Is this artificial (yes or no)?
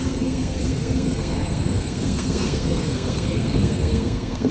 yes